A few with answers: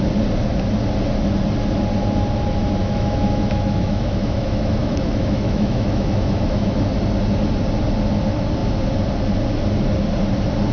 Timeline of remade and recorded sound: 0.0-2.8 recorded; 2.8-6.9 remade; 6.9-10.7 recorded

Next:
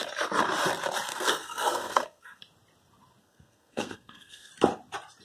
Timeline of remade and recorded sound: 0.0-1.1 recorded; 1.1-2.4 remade; 2.4-3.2 recorded; 3.2-4.5 remade; 4.5-5.2 recorded

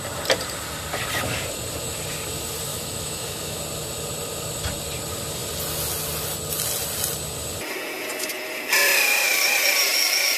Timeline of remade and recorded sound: 0.0-2.7 recorded; 2.7-3.6 remade; 3.6-10.4 recorded